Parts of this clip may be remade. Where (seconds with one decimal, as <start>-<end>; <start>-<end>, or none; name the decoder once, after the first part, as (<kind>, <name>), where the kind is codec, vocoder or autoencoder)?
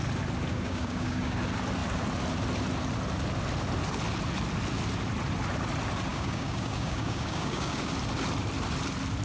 0.5-1.4 (codec, DAC); 6.1-7.9